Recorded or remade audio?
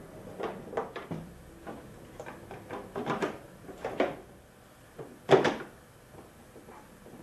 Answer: recorded